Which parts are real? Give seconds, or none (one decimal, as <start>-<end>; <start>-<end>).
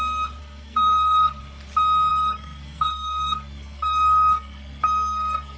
0.0-0.4; 1.4-2.1